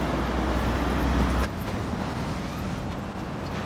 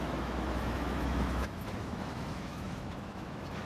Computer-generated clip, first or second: second